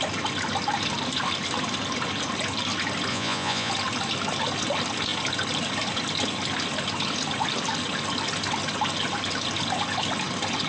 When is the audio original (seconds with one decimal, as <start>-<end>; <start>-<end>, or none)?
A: 0.0-3.1; 3.7-10.7